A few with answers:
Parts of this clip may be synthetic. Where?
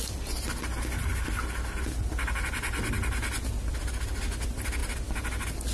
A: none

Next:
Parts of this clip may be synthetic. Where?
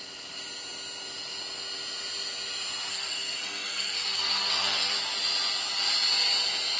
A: 2.9-4.9 (codec, SNAC)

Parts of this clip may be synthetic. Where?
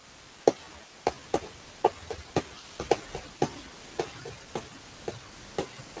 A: none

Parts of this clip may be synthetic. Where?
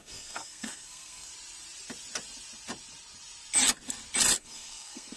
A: 0.0-1.3 (codec, SNAC); 4.4-5.2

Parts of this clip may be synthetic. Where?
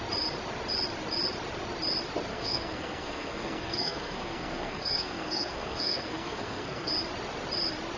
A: 2.3-6.9 (codec, SNAC)